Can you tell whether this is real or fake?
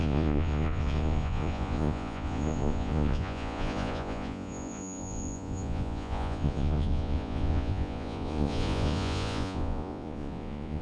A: fake